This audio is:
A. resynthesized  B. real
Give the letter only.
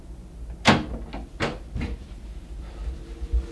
B